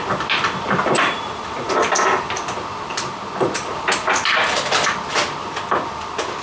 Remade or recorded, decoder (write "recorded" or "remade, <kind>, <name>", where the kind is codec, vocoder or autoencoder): recorded